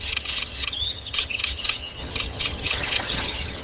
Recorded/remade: remade